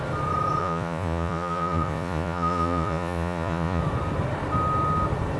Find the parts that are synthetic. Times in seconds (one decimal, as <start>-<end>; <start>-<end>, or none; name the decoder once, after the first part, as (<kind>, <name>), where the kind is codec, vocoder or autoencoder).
0.6-3.8 (vocoder, Vocos)